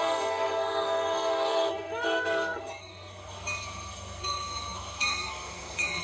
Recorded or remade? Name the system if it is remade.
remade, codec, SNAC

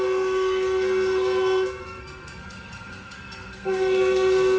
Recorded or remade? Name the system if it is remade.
remade, codec, SNAC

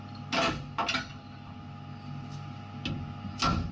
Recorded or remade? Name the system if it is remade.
recorded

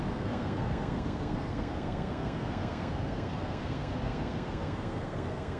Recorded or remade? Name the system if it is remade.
remade, codec, SNAC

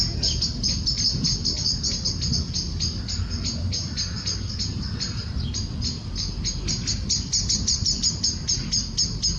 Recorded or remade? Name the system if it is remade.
recorded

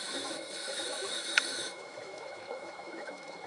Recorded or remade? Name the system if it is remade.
remade, autoencoder, DAC-VAE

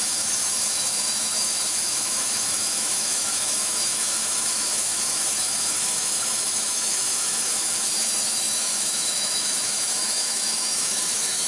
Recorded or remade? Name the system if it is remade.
remade, autoencoder, DAC-VAE